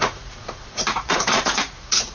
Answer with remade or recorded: remade